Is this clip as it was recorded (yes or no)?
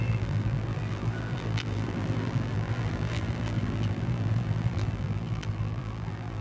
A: no